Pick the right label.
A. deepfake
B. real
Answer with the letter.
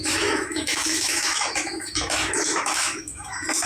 A